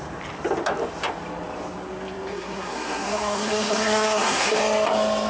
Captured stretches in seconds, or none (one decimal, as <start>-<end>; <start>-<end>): 0.0-2.3; 4.6-5.3

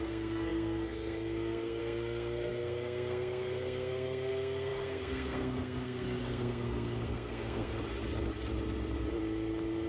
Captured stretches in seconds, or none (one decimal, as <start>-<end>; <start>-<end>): 7.7-9.9

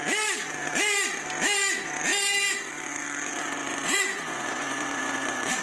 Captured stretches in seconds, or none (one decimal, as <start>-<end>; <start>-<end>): 0.0-3.7